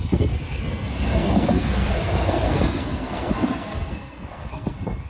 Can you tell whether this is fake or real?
fake